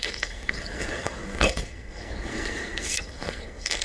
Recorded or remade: remade